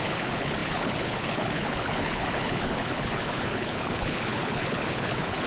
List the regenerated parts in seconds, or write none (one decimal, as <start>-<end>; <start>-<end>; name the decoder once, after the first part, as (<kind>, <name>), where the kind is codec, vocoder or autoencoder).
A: 0.0-5.5 (codec, HILCodec)